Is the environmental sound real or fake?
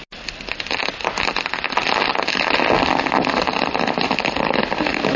real